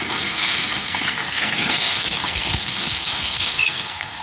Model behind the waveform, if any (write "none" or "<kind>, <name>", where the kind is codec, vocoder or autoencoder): codec, SNAC